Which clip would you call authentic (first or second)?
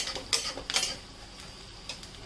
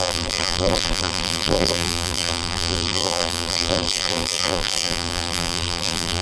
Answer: first